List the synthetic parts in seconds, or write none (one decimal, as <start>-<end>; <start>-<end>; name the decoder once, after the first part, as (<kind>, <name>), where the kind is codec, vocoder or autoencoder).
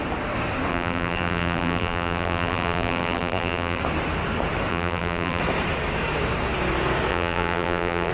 0.7-3.8 (vocoder, BigVGAN v2); 4.7-5.4; 7.1-8.1